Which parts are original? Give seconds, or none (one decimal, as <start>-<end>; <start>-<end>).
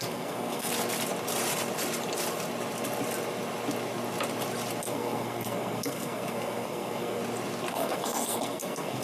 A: 0.7-4.8; 7.2-7.7